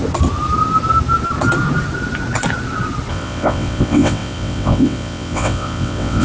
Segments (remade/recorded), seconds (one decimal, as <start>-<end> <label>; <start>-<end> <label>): 0.0-3.1 recorded; 3.1-6.2 remade